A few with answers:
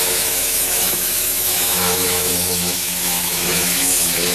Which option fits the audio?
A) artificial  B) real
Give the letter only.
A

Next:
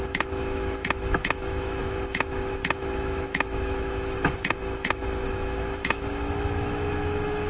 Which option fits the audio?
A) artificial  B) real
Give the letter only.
A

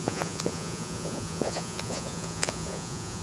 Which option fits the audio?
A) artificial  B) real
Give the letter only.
A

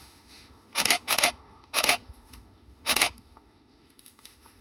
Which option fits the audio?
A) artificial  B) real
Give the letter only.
A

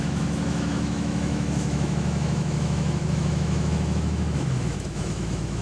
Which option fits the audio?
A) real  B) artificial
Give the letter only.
B